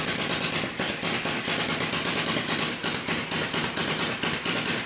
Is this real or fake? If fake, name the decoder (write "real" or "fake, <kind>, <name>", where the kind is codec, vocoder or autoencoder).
fake, vocoder, BigVGAN v2